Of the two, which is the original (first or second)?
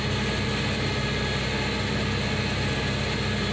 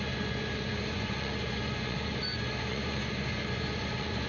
first